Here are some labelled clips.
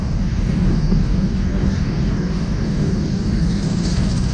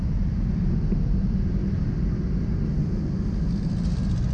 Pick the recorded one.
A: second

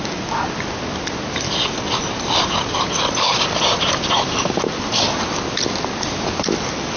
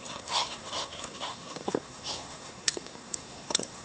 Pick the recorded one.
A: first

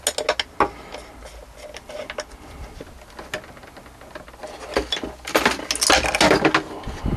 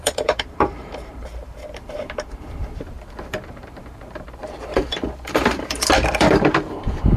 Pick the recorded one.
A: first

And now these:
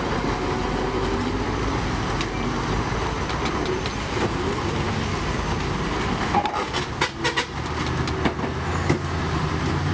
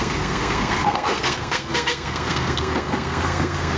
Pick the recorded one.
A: first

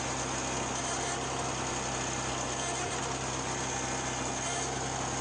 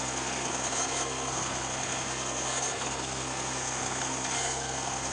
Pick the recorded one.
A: first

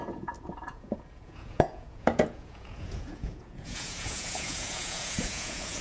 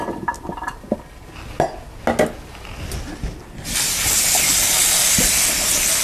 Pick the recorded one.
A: second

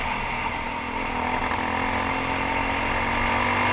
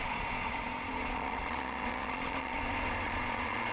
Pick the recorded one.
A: first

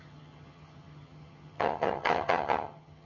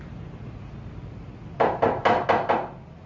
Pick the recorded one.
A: second